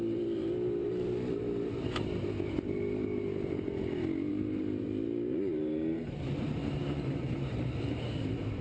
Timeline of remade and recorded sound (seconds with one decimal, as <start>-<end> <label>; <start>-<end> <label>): 0.0-1.9 remade; 1.9-4.3 recorded; 4.3-8.6 remade